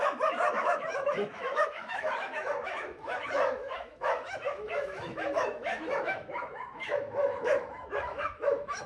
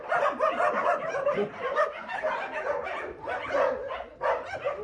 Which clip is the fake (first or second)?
first